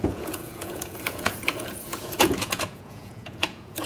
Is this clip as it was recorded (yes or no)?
no